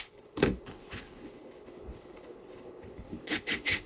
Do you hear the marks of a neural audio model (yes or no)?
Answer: yes